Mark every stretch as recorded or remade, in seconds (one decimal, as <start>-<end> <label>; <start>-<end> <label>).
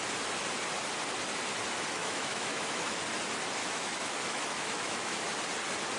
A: 0.0-2.0 recorded; 2.0-3.0 remade; 3.0-3.6 recorded; 3.6-5.2 remade; 5.2-6.0 recorded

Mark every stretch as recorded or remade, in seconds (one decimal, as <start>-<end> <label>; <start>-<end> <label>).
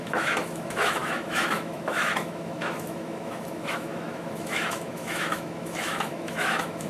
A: 0.0-6.9 remade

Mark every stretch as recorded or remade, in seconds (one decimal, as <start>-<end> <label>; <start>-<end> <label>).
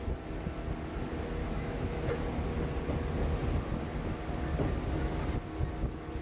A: 0.0-1.4 recorded; 1.4-2.1 remade; 2.1-6.2 recorded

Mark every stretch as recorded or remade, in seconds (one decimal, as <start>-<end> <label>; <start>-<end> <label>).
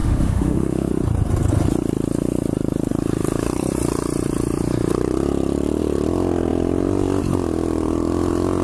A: 0.0-0.9 remade; 0.9-8.6 recorded